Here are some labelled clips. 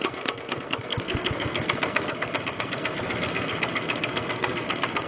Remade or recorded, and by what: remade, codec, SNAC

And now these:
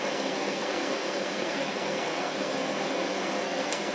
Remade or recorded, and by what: remade, codec, SNAC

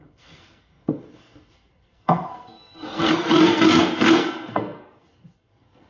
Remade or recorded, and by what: remade, codec, SNAC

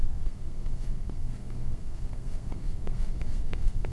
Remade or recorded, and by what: remade, codec, SNAC